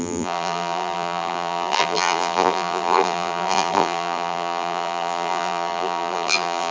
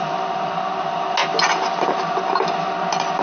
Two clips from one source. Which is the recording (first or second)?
second